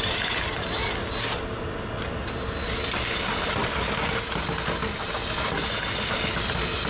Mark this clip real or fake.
real